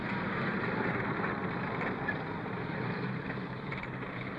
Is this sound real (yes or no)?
no